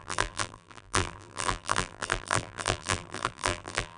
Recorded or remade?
remade